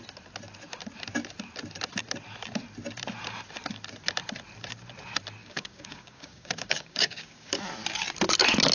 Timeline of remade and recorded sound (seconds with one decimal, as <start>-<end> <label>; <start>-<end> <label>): 0.0-5.4 recorded; 5.4-7.5 remade; 7.5-8.7 recorded